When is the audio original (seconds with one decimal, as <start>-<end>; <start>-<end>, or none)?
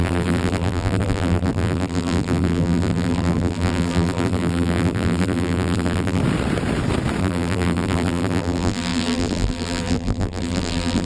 6.2-7.2